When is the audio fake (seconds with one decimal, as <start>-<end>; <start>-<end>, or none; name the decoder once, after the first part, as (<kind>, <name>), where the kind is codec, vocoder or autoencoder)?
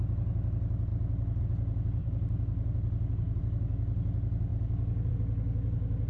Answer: none